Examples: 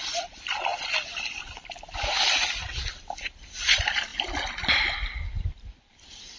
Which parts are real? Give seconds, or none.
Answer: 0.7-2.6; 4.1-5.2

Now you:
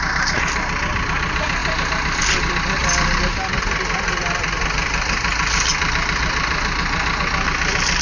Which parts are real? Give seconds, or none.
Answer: 1.6-2.2; 2.8-3.3